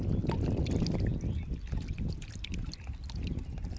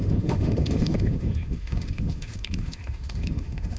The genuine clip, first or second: first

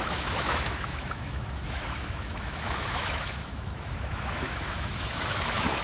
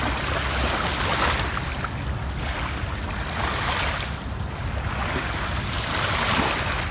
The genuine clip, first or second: second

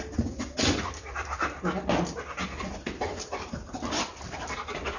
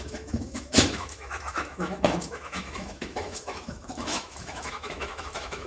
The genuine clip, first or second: first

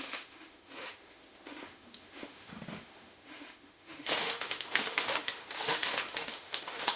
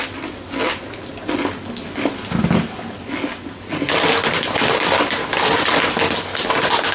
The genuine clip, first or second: second